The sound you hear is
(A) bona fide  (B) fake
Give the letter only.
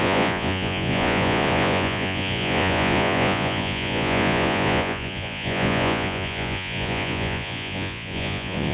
B